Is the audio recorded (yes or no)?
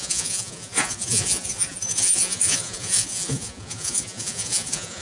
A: no